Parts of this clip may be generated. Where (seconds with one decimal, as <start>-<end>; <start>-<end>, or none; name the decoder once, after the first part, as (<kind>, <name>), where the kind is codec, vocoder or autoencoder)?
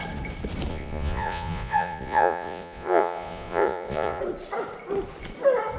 0.7-4.2 (vocoder, Vocos)